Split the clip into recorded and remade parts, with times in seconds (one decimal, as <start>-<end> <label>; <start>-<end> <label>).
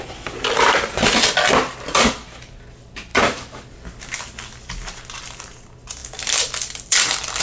0.0-3.1 recorded; 3.1-3.8 remade; 3.8-6.0 recorded; 6.0-7.4 remade